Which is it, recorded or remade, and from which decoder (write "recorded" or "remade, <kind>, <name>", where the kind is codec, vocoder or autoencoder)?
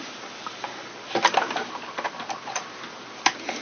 recorded